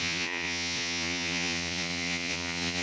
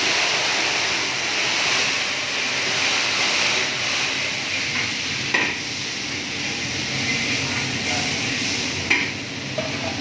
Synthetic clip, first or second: first